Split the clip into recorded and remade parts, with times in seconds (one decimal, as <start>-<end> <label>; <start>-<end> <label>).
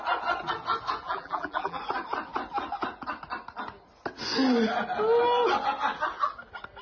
0.0-1.0 recorded; 1.0-1.8 remade; 1.8-6.8 recorded